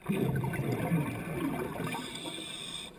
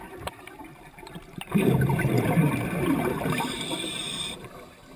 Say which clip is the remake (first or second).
second